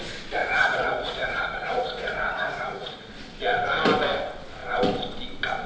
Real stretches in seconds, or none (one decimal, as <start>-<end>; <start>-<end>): 0.0-0.4; 3.1-5.7